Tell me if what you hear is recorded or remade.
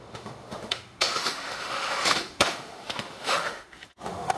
remade